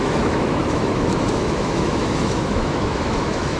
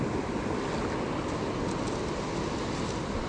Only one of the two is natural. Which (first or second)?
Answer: second